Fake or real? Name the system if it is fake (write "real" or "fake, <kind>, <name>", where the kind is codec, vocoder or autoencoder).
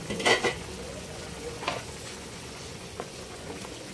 fake, vocoder, Vocos